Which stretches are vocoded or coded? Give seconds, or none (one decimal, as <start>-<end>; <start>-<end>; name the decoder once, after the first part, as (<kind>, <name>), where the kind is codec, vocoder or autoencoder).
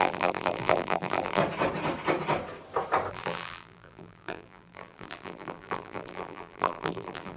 0.0-1.4 (vocoder, BigVGAN v2); 3.1-7.4